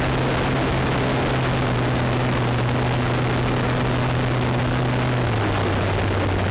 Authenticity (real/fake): real